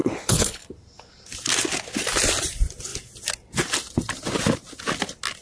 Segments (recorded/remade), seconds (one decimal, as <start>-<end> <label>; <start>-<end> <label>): 0.0-0.7 remade; 0.7-5.4 recorded